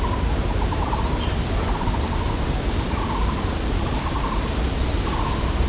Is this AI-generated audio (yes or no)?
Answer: no